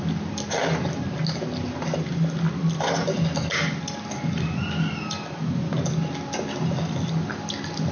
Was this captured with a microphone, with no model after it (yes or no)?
yes